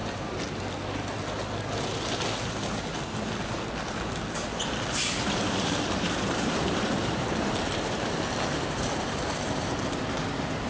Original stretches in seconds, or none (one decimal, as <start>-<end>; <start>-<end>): 0.0-4.9